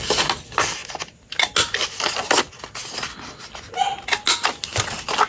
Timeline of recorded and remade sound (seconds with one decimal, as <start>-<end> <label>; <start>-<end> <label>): 0.0-5.3 recorded